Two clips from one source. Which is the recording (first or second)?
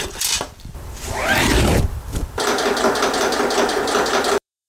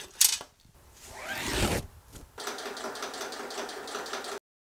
second